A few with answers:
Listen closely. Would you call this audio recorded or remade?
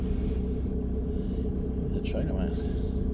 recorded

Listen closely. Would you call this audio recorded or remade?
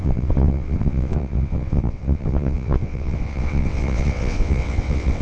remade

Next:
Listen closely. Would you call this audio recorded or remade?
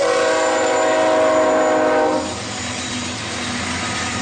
recorded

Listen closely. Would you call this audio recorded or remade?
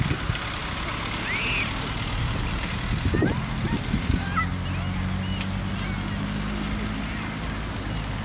recorded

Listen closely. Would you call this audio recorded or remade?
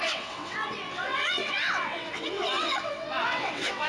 remade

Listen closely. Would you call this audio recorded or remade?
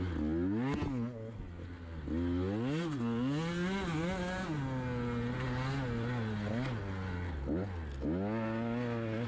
recorded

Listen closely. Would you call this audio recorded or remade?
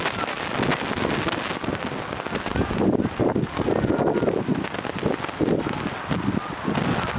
recorded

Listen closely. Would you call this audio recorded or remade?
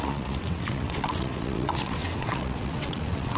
remade